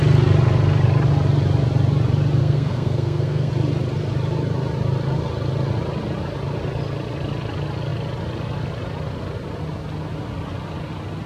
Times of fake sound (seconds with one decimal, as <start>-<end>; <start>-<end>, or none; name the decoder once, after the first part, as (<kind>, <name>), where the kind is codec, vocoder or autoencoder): 2.4-3.5 (codec, SNAC)